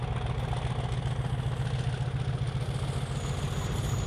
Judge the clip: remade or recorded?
recorded